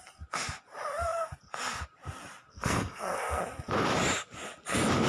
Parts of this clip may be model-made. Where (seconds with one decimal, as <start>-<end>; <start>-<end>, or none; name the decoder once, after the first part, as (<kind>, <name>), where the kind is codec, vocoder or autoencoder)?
2.5-3.4 (codec, SNAC)